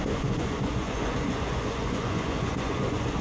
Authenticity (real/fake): fake